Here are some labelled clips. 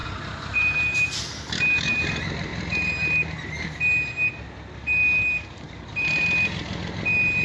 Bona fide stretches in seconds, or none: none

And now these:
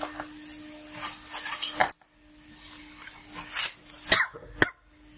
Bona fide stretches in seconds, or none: 0.0-5.2

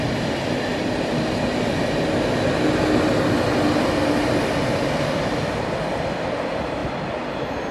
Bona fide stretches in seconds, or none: 0.0-7.7

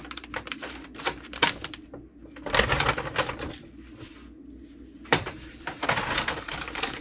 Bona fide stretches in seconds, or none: 1.4-5.0

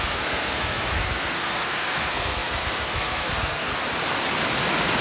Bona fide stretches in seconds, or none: 3.7-5.0

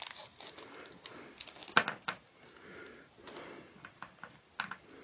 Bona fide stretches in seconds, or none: 0.0-5.0

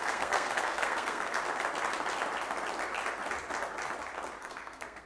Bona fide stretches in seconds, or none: 1.3-4.4

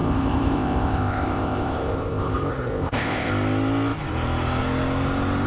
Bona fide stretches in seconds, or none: 3.3-5.5